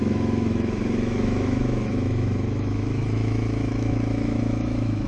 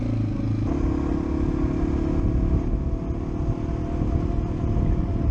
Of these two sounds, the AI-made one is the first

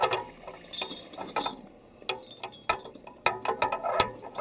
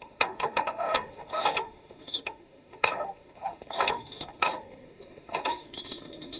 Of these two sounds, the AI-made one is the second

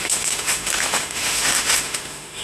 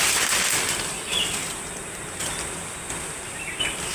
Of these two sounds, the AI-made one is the first